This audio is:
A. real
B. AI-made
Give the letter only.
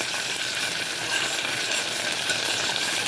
B